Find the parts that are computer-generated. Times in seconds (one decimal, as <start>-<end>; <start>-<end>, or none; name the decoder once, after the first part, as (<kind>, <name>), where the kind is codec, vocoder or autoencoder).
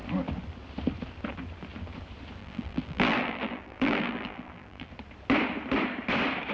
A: 2.4-4.9 (vocoder, BigVGAN v2)